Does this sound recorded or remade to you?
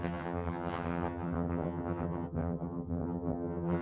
remade